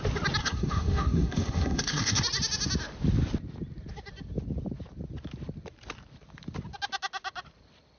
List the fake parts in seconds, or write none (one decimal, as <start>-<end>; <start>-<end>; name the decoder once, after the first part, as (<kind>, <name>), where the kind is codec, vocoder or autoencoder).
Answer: 0.4-2.2 (codec, SNAC)